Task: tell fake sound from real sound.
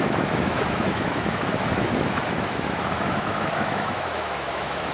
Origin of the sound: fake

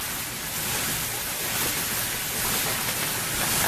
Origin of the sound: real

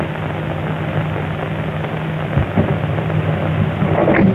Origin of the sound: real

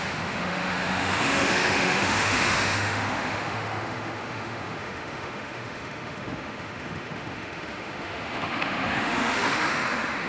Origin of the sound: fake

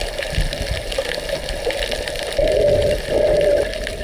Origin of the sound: real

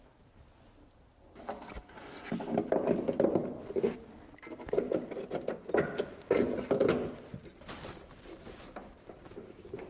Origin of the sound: real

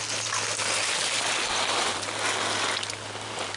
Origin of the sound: real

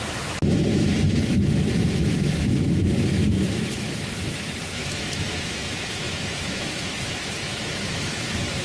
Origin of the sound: fake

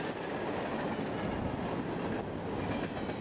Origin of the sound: real